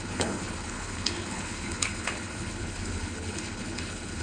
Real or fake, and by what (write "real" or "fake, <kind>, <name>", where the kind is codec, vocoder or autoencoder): fake, codec, HILCodec